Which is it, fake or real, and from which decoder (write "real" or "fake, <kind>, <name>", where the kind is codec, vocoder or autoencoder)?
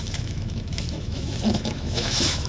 fake, autoencoder, DAC-VAE